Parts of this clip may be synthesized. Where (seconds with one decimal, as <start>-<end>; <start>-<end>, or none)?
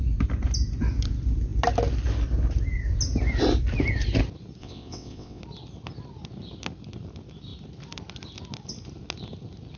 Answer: 4.6-5.4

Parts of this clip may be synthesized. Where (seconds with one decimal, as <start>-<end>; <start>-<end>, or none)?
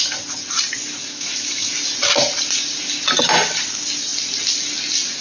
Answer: 1.0-1.7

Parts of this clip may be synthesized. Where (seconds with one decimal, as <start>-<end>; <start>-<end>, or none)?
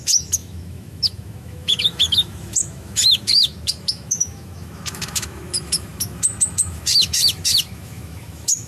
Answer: 0.0-8.7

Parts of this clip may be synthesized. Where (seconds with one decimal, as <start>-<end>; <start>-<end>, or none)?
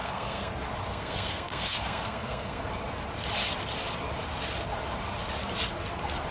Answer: 0.0-0.5; 0.9-2.7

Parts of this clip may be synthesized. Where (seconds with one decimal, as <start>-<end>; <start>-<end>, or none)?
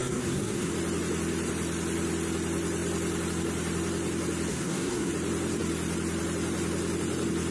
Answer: 0.0-0.7; 4.5-5.1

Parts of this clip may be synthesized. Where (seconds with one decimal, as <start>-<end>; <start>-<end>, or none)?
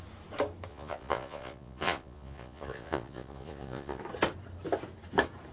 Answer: 0.7-4.0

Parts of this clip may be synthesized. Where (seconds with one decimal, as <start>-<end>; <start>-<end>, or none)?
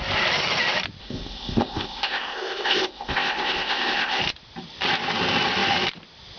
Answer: 1.0-4.2